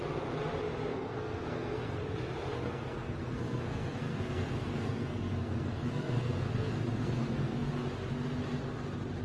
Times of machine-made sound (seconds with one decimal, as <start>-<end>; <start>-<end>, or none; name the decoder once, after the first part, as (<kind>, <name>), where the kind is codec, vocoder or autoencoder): 0.9-2.0 (codec, SNAC); 2.5-7.7